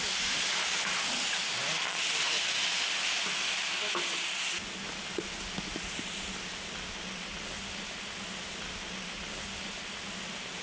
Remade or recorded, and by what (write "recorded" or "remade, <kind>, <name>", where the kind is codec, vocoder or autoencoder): recorded